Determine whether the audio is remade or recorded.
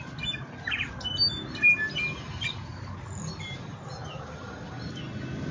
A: recorded